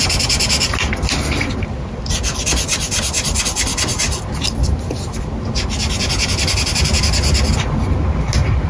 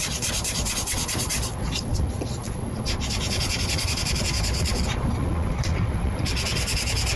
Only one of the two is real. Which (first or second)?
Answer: first